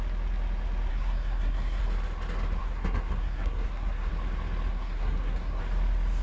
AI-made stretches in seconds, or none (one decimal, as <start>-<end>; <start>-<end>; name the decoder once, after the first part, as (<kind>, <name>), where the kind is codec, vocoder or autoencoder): 0.9-1.8 (codec, SNAC); 2.6-4.1; 4.7-5.6